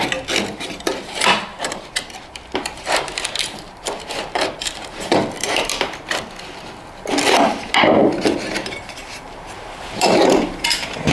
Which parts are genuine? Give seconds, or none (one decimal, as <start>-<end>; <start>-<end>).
0.0-1.5; 6.2-9.0